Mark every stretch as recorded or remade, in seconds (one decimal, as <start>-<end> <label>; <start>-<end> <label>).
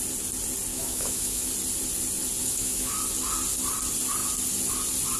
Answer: 0.0-0.7 recorded; 0.7-1.5 remade; 1.5-2.4 recorded; 2.4-2.9 remade; 2.9-5.2 recorded